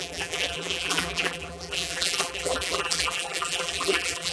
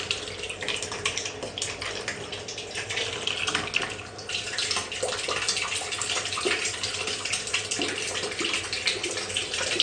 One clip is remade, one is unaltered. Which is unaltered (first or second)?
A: second